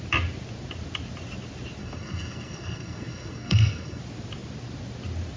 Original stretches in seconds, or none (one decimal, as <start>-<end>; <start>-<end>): 0.0-1.8; 4.0-5.4